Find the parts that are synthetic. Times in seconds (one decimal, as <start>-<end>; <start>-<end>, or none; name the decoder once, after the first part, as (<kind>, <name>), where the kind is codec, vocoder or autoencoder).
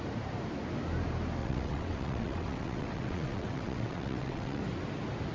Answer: 1.4-4.6 (vocoder, WaveNeXt)